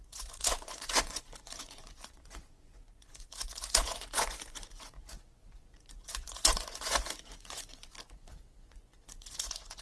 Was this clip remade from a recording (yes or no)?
yes